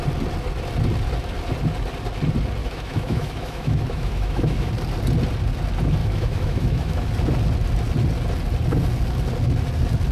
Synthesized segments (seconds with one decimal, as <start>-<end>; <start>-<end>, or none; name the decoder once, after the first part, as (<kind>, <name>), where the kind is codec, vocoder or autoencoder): 2.6-4.7 (autoencoder, DAC-VAE); 6.0-7.1

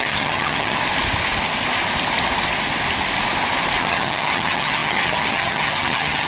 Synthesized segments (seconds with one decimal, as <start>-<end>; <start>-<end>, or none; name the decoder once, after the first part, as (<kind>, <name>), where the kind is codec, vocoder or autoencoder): 0.0-0.8 (vocoder, HiFi-GAN); 3.8-6.3

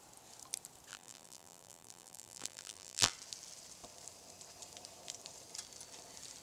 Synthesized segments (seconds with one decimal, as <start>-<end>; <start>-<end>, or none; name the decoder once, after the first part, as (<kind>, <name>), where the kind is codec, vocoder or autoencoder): 0.9-3.1 (vocoder, BigVGAN v2)

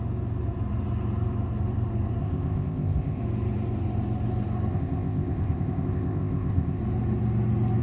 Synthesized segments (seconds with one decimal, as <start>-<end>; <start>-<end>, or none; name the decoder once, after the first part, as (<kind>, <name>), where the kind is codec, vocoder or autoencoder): 2.2-3.2 (codec, ZipCodec); 4.7-6.8